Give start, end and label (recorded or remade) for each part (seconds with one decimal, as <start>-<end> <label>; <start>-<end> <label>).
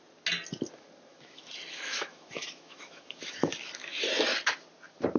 0.0-1.1 recorded; 1.1-4.0 remade; 4.0-5.2 recorded